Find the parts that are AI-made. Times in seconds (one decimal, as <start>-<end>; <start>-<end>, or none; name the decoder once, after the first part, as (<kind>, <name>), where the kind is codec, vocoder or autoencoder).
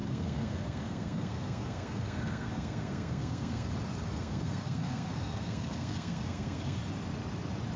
0.0-3.7 (codec, SNAC); 4.2-6.8